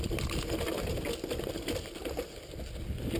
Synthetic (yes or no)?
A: no